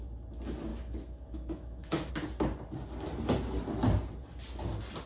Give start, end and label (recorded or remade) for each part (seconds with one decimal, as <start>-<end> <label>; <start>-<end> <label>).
0.0-0.7 recorded; 0.7-2.1 remade; 2.1-5.1 recorded